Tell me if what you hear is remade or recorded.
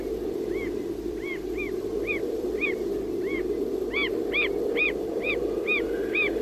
remade